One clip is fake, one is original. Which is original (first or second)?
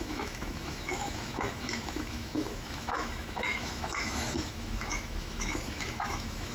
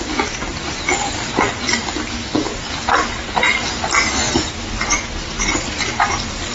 second